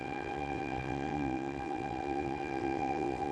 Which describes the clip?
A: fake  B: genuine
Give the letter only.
A